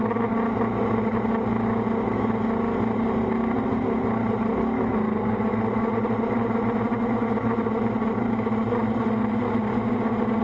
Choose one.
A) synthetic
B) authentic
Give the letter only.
B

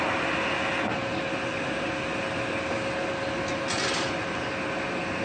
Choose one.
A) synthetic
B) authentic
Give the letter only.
B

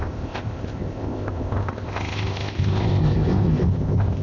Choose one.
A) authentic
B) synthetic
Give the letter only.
B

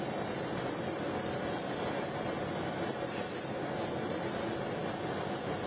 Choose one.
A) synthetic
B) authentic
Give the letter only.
B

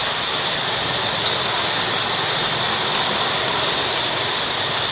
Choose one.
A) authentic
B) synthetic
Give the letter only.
A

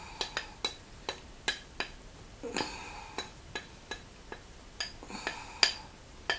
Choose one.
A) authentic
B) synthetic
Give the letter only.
A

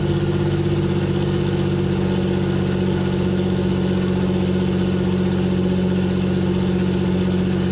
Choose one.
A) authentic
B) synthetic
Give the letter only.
A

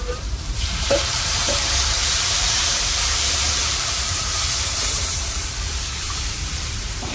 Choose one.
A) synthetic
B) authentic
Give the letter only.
A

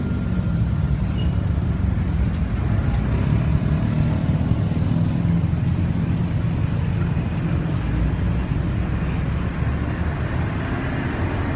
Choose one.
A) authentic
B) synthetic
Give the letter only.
A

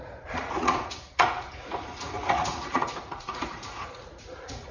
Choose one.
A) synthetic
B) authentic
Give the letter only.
A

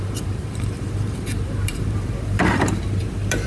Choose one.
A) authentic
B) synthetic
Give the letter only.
B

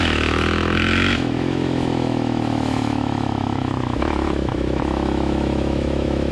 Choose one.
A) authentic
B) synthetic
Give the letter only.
B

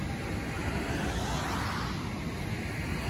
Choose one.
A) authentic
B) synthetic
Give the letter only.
A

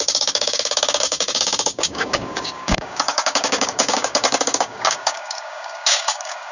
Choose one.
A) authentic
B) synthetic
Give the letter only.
B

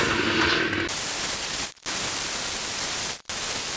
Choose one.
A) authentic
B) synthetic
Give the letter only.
A